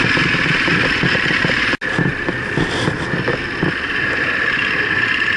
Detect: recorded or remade recorded